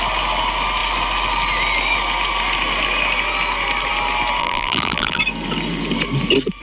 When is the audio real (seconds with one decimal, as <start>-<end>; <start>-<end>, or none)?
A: 0.0-4.4; 5.2-6.6